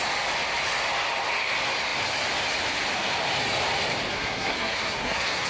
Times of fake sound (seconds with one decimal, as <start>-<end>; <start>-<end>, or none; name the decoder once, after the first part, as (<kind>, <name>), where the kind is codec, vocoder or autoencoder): 4.1-5.5 (codec, SNAC)